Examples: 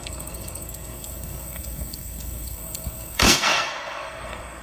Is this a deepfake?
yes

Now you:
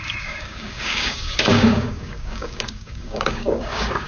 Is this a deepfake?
yes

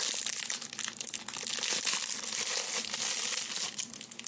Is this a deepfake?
no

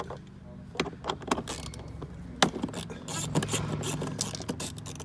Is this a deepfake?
no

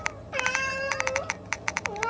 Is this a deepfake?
no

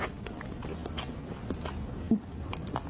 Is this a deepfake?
no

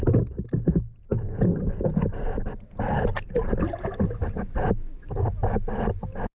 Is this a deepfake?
no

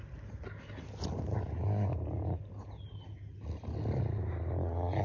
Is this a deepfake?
no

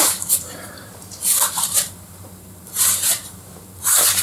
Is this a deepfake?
yes